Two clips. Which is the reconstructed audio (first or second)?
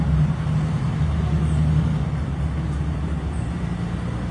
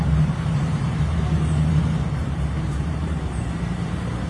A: second